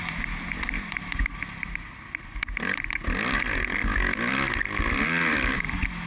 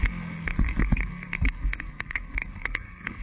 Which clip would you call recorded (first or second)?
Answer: first